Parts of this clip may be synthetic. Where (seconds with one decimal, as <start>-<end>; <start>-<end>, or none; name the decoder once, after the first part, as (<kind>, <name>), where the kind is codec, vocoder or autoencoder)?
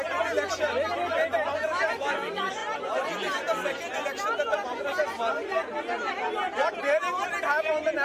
none